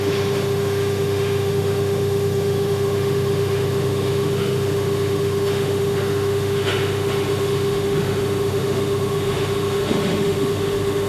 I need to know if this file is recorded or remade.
remade